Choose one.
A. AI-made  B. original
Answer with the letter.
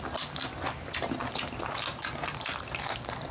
B